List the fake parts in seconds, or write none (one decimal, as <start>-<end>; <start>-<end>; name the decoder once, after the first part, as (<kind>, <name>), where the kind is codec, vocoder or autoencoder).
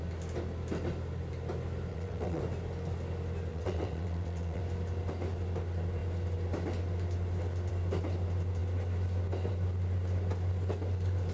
1.9-2.4 (vocoder, WaveNeXt); 3.5-4.6